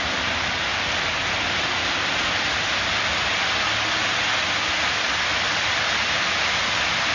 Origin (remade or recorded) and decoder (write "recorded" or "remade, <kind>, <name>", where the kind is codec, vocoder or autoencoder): recorded